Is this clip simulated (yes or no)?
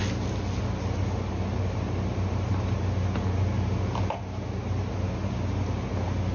no